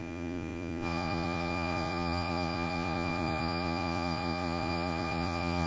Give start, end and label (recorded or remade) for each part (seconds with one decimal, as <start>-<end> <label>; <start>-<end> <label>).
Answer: 0.0-5.7 remade